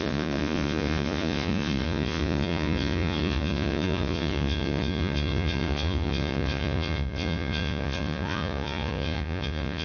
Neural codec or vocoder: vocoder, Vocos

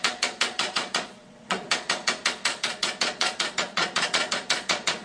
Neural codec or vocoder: vocoder, Vocos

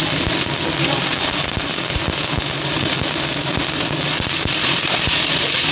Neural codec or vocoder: none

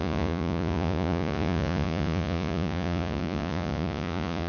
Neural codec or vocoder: vocoder, Vocos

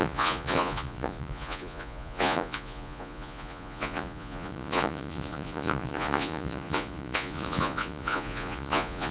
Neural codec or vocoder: vocoder, Vocos